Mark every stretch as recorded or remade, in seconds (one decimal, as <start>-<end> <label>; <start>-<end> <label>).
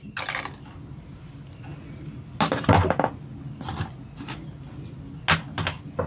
0.0-6.1 recorded